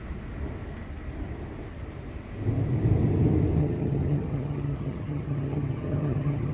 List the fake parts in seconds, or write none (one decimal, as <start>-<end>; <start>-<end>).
3.6-6.5